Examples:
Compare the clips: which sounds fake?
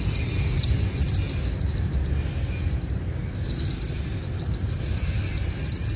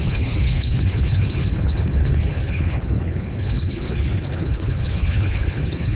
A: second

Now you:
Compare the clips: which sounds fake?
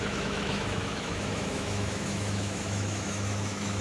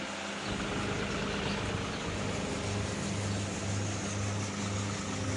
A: first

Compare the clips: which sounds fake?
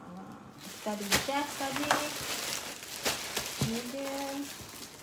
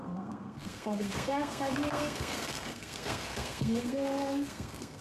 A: second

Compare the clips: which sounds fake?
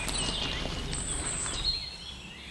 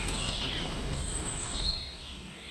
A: second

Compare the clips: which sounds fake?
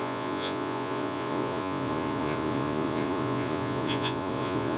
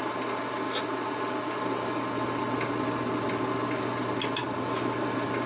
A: first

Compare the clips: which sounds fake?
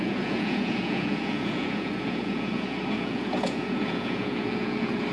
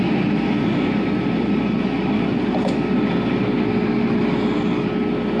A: first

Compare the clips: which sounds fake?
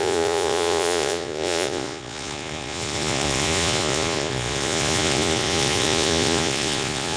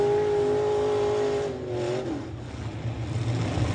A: first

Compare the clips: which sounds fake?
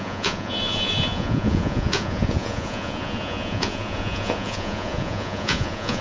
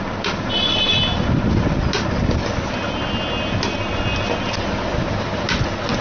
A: first